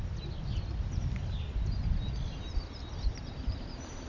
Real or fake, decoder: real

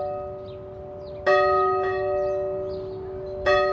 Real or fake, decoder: real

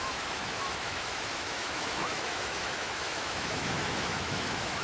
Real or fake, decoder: fake, autoencoder, DAC-VAE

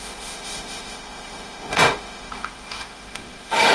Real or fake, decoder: fake, autoencoder, DAC-VAE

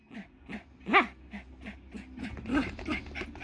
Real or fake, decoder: real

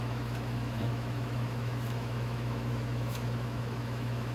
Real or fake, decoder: fake, autoencoder, DAC-VAE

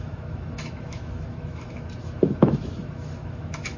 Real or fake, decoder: fake, autoencoder, DAC-VAE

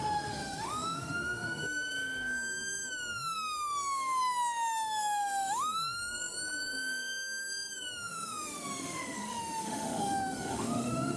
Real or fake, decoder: fake, autoencoder, DAC-VAE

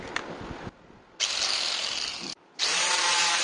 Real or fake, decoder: real